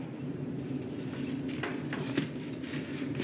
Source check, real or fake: real